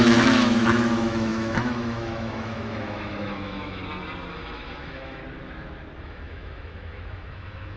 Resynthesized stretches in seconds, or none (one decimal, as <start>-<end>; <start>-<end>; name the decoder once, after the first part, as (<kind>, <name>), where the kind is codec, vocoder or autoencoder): 0.0-3.8 (autoencoder, DAC-VAE); 4.3-5.2; 6.0-7.8